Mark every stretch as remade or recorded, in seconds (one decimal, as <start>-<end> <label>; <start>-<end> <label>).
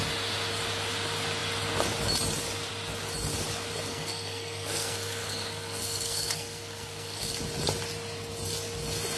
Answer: 0.0-3.9 recorded; 3.9-7.3 remade; 7.3-9.2 recorded